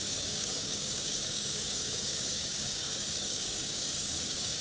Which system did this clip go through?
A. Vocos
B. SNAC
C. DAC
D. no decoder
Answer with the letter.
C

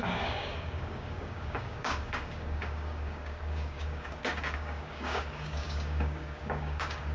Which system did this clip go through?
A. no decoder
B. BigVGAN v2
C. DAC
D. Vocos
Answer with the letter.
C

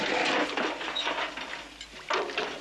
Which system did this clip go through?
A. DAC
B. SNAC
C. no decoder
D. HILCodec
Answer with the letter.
C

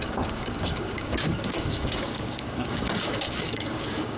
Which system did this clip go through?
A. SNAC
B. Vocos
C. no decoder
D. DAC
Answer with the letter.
D